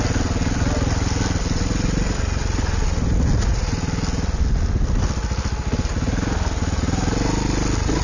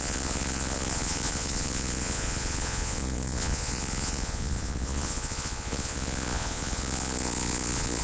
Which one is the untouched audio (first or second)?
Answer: first